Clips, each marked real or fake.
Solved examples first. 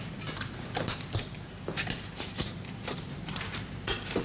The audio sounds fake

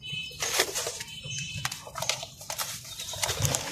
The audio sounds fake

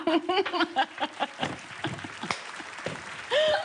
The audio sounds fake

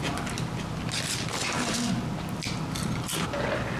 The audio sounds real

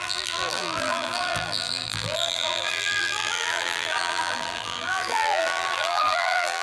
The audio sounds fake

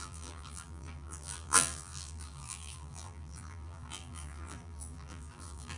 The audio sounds fake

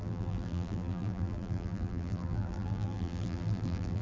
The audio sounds fake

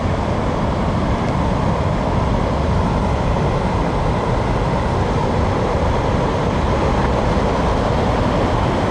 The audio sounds fake